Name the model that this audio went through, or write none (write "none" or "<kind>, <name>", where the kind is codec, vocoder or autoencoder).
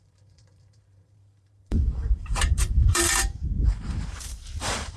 vocoder, BigVGAN v2